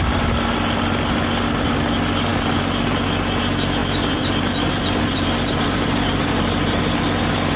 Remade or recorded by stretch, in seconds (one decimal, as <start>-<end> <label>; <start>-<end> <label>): 0.0-3.8 recorded; 3.8-6.4 remade; 6.4-7.6 recorded